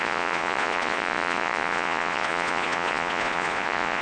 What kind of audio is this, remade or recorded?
remade